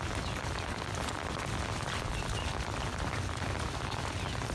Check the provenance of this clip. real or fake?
real